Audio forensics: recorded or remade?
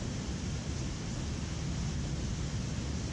recorded